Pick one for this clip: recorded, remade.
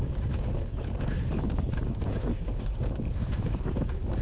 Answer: remade